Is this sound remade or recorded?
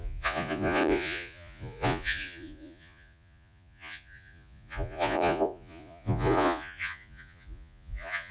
remade